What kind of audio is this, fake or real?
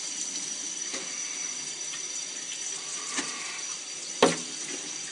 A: real